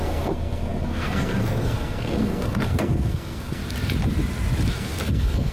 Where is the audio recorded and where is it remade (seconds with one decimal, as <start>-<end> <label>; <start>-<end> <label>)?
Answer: 0.0-3.6 remade; 3.6-4.7 recorded; 4.7-5.5 remade